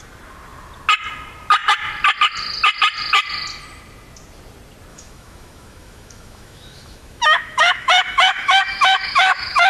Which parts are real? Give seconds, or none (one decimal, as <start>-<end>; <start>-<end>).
0.0-4.9